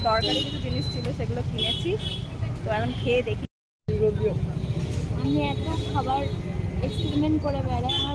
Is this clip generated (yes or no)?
no